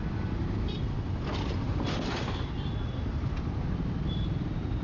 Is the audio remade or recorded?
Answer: recorded